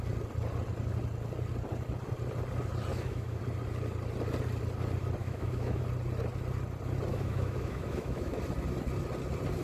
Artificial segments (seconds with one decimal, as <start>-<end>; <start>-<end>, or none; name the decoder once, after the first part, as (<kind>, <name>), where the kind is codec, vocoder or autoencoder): 2.9-3.4 (autoencoder, DAC-VAE); 5.2-5.8; 7.1-8.4